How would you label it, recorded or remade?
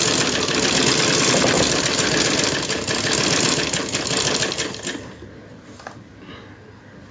recorded